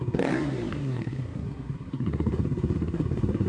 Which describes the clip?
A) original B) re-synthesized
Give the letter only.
B